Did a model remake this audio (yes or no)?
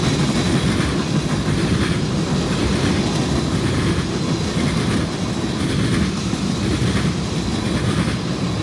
no